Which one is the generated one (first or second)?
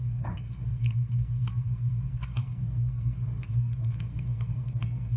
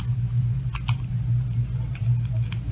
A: first